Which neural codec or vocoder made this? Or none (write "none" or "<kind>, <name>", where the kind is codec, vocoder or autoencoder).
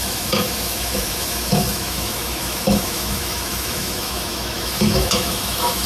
autoencoder, DAC-VAE